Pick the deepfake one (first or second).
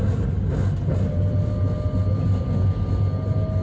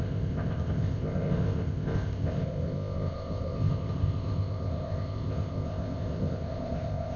second